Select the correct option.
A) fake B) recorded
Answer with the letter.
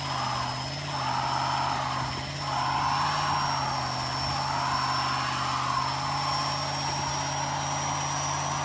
B